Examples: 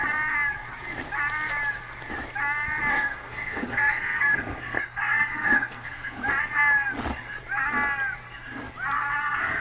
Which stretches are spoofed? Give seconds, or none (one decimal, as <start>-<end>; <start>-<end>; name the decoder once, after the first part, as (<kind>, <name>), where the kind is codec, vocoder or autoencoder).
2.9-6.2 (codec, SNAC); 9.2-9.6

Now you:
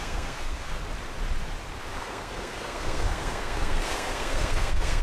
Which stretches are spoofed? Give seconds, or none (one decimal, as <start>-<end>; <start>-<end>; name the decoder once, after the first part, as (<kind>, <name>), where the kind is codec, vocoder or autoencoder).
0.0-0.8 (codec, SNAC); 1.8-5.0

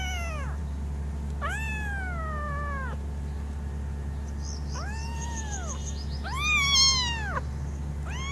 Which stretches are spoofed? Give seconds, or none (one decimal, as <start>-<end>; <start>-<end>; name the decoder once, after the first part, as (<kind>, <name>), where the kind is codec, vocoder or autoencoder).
none

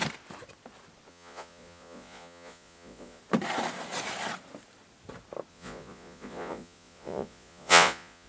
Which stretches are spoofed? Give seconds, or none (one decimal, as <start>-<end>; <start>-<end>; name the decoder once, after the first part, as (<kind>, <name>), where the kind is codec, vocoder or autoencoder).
1.1-3.2 (vocoder, Vocos); 5.5-8.3